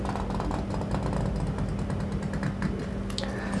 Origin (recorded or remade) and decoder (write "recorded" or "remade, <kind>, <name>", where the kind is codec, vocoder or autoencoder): recorded